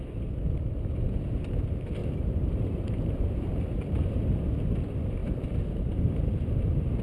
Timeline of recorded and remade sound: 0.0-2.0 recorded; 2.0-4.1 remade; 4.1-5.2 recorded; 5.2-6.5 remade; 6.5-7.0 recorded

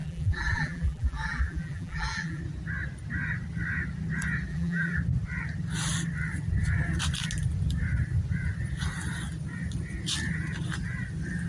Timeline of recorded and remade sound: 0.0-2.4 remade; 2.4-4.5 recorded; 4.5-5.0 remade; 5.0-11.5 recorded

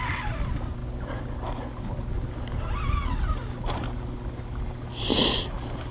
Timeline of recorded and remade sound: 0.0-5.9 recorded

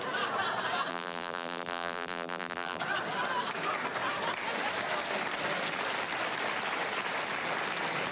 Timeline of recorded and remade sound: 0.0-0.9 recorded; 0.9-2.8 remade; 2.8-8.1 recorded

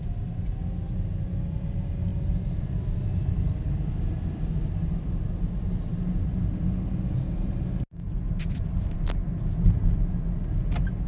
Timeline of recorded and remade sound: 0.0-2.1 recorded; 2.1-3.0 remade; 3.0-11.1 recorded